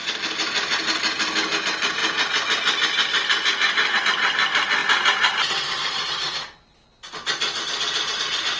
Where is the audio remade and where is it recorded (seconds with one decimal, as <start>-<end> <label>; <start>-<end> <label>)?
0.0-8.6 recorded